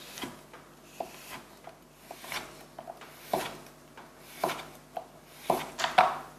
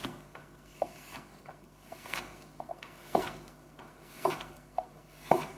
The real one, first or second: first